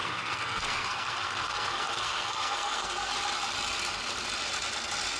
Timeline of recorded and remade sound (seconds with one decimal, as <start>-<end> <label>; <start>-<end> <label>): 0.0-3.1 remade; 3.1-5.2 recorded